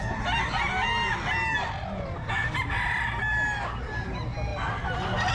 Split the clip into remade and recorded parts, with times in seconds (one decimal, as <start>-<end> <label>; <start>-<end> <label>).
0.0-5.3 recorded